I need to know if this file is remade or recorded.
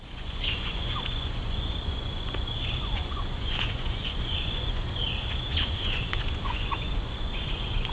remade